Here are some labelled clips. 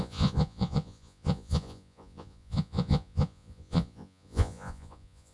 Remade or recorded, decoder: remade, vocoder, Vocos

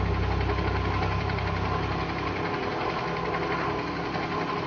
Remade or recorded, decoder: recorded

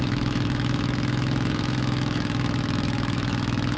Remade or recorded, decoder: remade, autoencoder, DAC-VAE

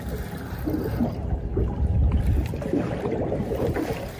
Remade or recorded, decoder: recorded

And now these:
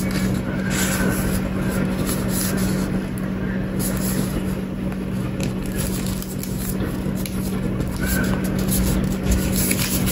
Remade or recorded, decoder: recorded